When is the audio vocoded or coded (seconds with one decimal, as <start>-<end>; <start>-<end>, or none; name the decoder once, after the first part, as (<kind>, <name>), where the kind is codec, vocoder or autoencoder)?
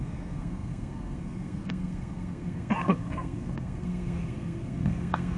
0.0-5.4 (codec, SNAC)